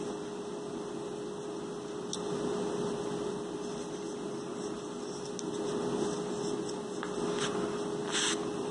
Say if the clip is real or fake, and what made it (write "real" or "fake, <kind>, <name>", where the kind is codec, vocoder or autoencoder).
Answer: real